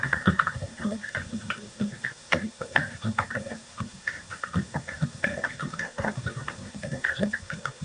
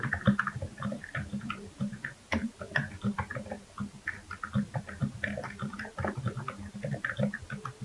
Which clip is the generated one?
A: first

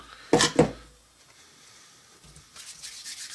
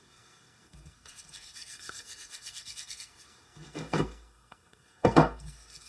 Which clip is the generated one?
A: second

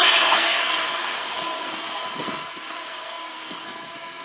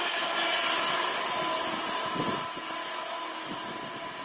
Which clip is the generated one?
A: first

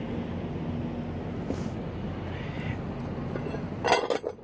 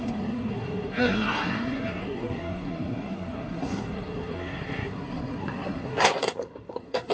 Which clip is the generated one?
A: second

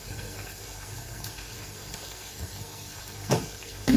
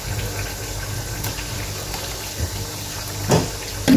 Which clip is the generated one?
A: first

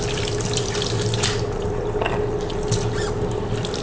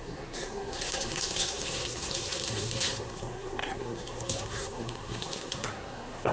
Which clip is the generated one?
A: second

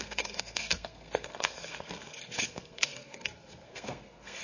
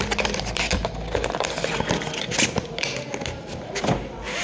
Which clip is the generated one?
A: first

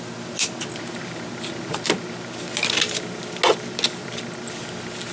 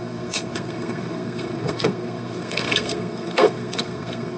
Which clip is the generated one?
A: second